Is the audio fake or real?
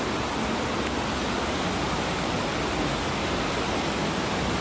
real